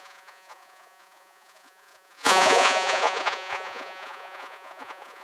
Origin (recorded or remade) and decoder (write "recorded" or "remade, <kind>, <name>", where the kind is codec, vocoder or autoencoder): remade, vocoder, Vocos